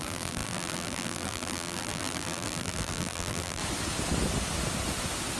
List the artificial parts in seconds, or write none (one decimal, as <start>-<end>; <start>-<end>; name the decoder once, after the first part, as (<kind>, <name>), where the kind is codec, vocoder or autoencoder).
0.0-3.6 (vocoder, BigVGAN v2)